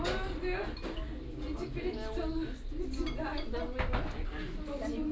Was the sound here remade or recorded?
recorded